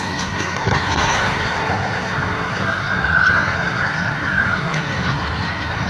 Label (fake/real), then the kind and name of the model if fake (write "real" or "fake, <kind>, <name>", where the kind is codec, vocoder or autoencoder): fake, codec, SNAC